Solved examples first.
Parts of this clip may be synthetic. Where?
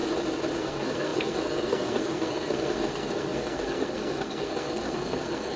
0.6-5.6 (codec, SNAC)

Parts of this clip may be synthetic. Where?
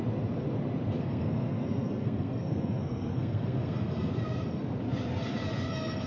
1.0-4.1 (codec, SNAC)